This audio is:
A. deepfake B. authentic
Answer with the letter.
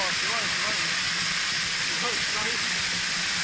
B